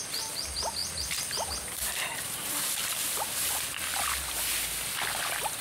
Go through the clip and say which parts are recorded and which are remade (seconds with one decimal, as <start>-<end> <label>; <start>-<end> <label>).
0.0-5.6 recorded